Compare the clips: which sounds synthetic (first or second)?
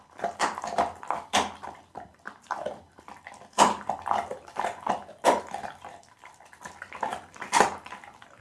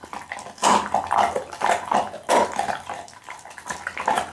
first